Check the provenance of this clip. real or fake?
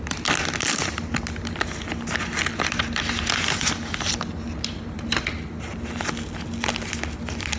real